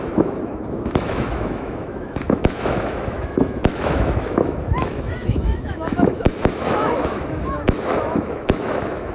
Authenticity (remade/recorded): remade